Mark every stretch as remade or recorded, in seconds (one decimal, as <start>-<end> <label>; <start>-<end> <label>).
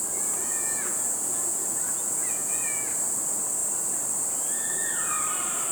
0.0-0.4 recorded; 0.4-3.0 remade; 3.0-5.7 recorded